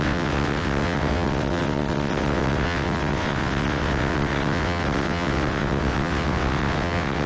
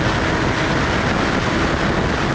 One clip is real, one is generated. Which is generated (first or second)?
first